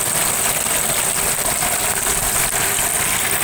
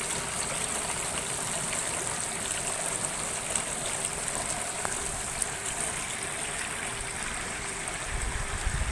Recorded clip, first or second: first